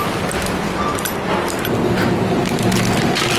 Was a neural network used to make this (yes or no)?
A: no